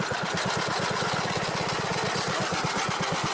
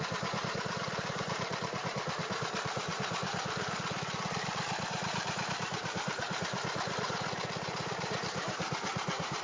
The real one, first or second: first